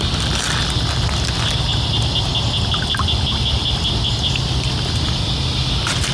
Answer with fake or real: real